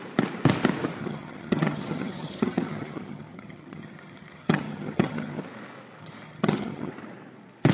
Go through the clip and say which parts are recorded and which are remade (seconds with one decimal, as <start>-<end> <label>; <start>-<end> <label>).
0.0-1.0 recorded; 1.0-5.4 remade; 5.4-6.0 recorded; 6.0-6.9 remade; 6.9-7.7 recorded